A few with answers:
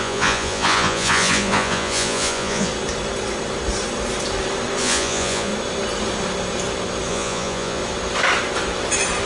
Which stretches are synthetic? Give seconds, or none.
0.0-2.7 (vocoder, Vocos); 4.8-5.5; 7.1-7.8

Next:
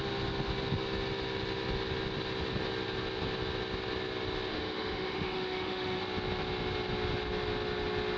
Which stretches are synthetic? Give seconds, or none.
4.5-6.0 (autoencoder, DAC-VAE)

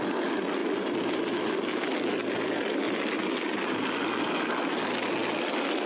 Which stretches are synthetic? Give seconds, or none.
none

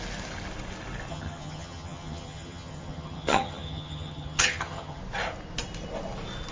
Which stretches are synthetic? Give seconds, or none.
1.1-5.0 (vocoder, HiFi-GAN)